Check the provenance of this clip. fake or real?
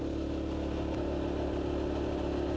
real